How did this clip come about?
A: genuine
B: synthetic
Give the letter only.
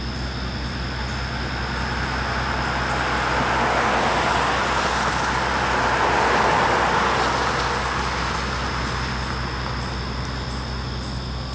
A